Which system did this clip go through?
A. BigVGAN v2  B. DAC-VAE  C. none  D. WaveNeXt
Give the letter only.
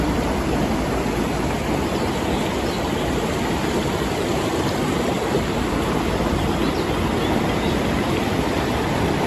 A